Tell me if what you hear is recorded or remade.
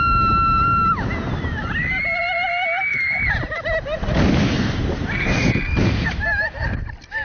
recorded